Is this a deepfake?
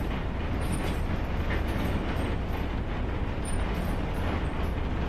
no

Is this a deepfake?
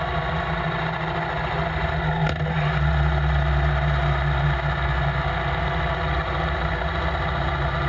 no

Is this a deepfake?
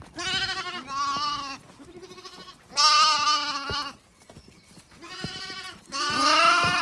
no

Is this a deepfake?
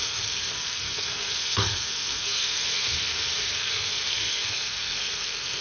yes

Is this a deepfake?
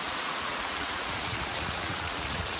yes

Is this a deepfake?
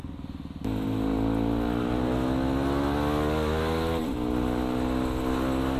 no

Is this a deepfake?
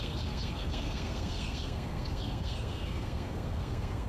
yes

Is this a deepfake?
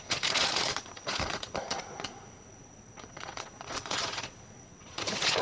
yes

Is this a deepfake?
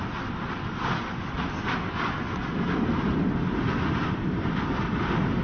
no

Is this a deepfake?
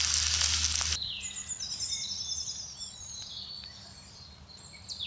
no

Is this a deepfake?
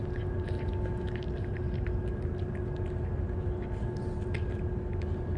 no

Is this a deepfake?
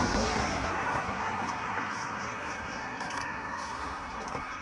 yes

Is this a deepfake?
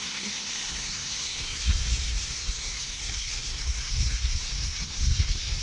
yes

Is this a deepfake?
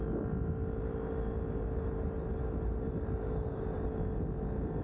no